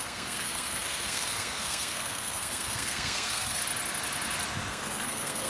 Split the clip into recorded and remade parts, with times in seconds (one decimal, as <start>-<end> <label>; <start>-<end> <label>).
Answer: 0.0-3.6 remade; 3.6-4.7 recorded; 4.7-5.5 remade